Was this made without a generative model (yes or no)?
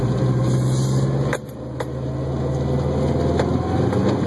yes